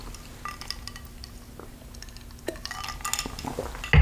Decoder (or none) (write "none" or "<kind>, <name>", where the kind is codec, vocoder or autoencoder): none